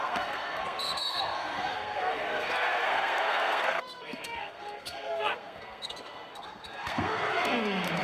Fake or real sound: fake